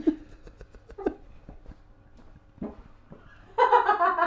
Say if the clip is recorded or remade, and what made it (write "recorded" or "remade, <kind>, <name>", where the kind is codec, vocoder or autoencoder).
recorded